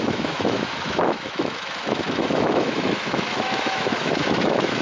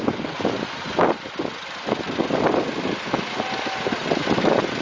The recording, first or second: second